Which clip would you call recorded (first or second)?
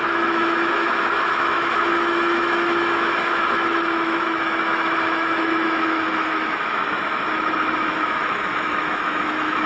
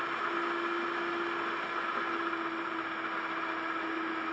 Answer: second